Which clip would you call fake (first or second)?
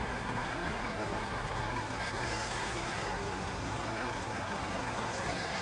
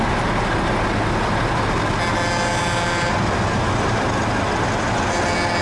first